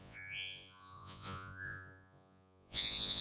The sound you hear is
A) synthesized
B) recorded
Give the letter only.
A